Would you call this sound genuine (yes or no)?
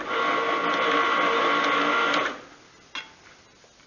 yes